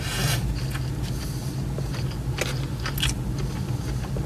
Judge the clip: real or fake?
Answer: real